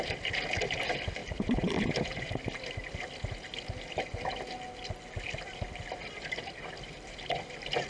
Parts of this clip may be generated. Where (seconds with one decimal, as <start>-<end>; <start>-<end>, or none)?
none